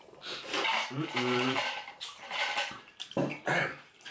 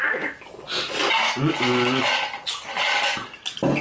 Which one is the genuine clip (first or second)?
second